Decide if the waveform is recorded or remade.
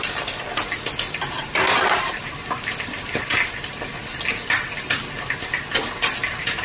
recorded